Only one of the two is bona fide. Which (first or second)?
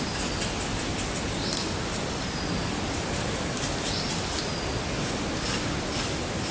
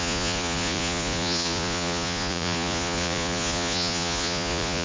first